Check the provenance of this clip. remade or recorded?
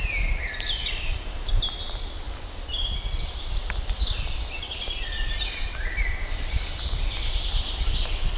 recorded